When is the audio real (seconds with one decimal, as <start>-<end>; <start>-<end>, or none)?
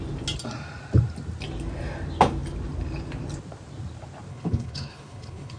0.0-4.3